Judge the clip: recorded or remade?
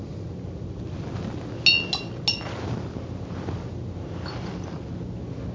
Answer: recorded